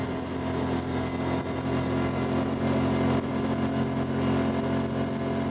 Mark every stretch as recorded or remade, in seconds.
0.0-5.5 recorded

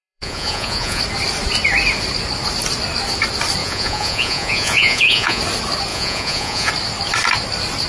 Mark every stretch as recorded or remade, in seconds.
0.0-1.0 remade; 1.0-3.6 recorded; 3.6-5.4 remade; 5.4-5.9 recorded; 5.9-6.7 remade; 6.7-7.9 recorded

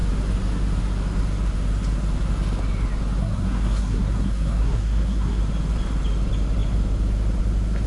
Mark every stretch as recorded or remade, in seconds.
0.0-3.2 recorded; 3.2-5.4 remade; 5.4-7.9 recorded